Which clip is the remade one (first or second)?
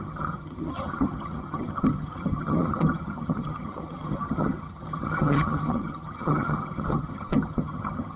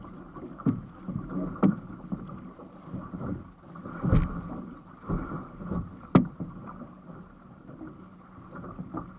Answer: first